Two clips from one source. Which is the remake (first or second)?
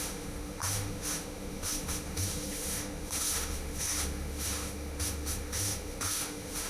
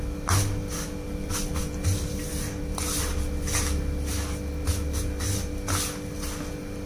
first